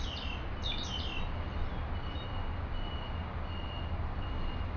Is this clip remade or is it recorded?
recorded